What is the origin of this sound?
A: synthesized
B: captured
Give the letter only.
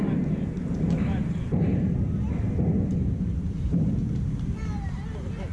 B